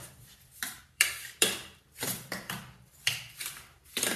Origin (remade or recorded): remade